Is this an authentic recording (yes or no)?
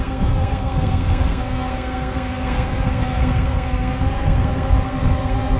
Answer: no